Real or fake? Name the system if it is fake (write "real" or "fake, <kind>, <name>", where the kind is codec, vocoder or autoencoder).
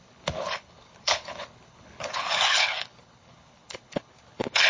fake, codec, HILCodec